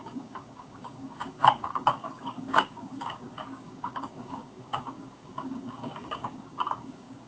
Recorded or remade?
remade